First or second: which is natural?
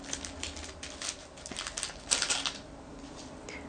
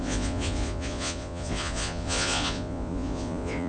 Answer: first